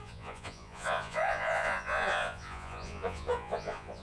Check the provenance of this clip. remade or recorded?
remade